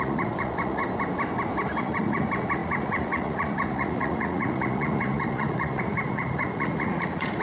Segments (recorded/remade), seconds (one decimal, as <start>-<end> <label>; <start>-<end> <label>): 0.0-0.8 remade; 0.8-1.8 recorded; 1.8-7.4 remade